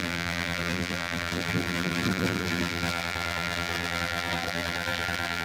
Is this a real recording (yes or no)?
no